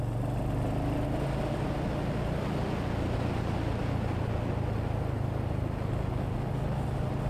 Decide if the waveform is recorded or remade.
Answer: recorded